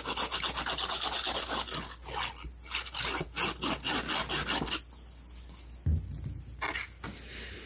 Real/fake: real